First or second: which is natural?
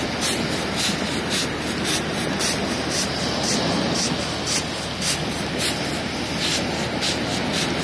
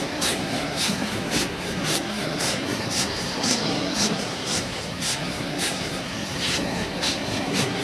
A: first